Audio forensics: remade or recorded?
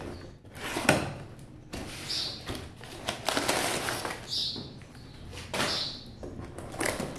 recorded